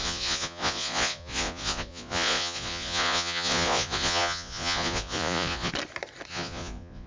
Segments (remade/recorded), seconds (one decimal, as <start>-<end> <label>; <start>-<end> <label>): 0.0-5.7 remade; 5.7-6.3 recorded; 6.3-7.1 remade